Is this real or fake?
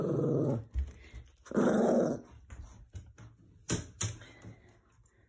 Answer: real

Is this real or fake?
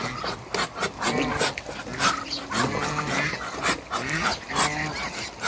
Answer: real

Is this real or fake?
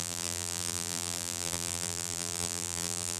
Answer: fake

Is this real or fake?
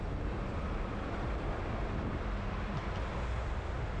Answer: fake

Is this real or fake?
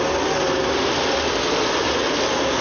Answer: real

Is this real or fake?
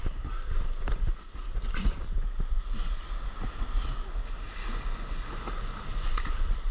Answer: real